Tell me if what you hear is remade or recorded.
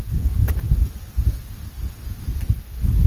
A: recorded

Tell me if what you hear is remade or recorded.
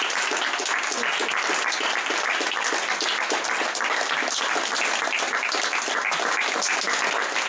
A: recorded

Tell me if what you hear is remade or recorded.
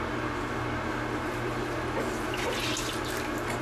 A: recorded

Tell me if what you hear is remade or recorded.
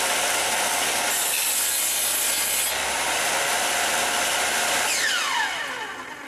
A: recorded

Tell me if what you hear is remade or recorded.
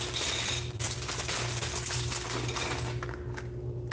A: recorded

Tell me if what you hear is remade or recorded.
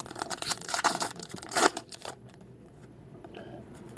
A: remade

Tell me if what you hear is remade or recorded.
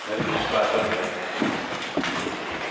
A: recorded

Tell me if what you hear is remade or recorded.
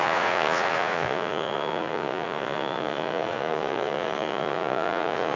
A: remade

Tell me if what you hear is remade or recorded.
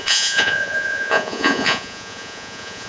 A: remade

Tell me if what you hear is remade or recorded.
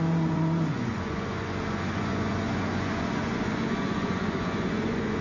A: remade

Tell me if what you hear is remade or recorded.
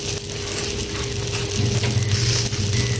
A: recorded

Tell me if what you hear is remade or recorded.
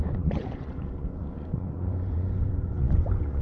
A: remade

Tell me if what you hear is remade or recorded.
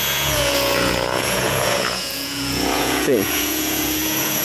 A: remade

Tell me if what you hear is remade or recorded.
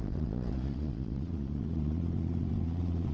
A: remade